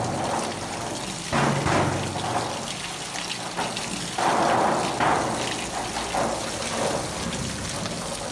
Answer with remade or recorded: recorded